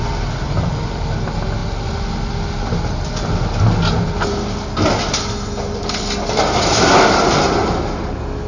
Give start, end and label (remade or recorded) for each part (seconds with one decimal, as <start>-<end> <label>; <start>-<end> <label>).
0.0-8.5 recorded